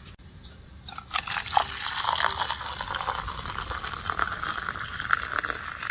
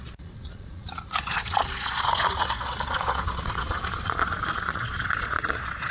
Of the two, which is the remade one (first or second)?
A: second